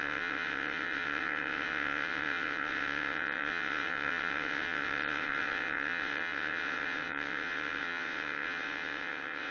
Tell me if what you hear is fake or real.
fake